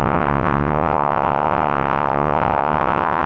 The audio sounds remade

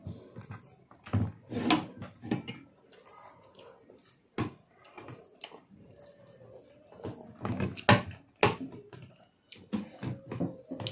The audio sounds recorded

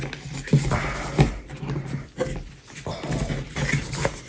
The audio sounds recorded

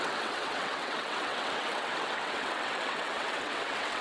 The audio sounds remade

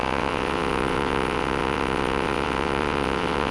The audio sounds remade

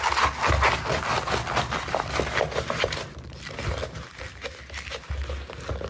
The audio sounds recorded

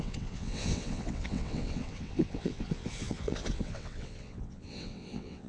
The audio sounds remade